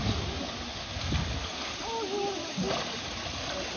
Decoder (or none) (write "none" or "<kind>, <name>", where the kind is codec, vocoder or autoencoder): none